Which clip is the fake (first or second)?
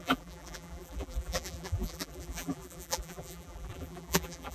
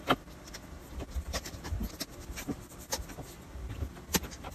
first